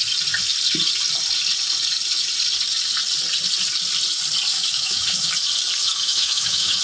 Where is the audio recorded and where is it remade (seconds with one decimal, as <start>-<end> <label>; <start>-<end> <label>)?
0.0-4.5 recorded; 4.5-5.3 remade; 5.3-5.8 recorded; 5.8-6.8 remade